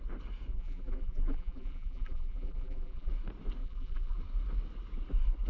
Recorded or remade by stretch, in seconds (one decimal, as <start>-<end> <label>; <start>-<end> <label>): 0.0-0.5 recorded; 0.5-3.1 remade; 3.1-3.6 recorded; 3.6-4.2 remade; 4.2-5.5 recorded